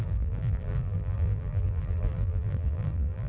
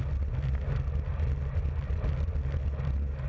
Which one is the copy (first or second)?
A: first